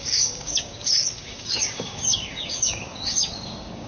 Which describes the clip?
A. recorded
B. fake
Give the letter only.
B